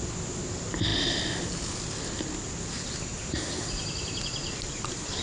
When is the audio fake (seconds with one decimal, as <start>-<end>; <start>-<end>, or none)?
3.1-4.2